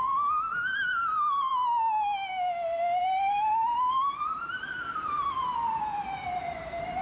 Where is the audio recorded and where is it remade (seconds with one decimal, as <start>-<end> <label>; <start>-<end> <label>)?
0.0-1.5 remade; 1.5-3.0 recorded; 3.0-7.0 remade